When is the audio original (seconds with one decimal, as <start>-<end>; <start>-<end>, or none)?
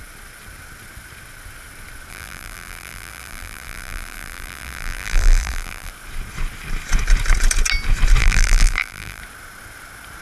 0.0-2.1; 5.9-8.2; 9.2-10.2